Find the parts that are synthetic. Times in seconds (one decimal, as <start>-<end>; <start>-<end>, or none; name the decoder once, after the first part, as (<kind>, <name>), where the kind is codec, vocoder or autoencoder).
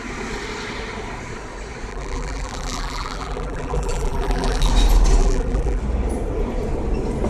1.9-4.7 (vocoder, BigVGAN v2); 5.2-5.8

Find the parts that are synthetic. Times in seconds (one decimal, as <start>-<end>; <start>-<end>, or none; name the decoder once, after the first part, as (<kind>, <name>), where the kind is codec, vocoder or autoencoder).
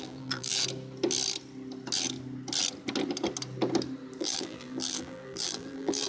0.0-0.5 (vocoder, BigVGAN v2); 4.2-6.1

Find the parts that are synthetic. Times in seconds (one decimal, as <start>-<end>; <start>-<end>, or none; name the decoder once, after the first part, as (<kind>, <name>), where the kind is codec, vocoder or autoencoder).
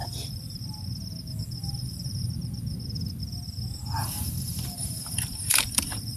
0.0-0.6 (vocoder, BigVGAN v2); 1.6-2.3; 4.0-6.2